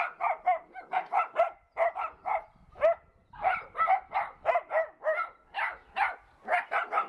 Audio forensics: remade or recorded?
recorded